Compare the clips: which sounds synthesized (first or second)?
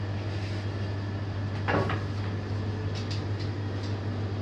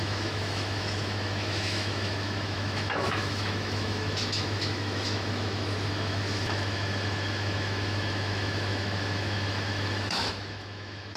second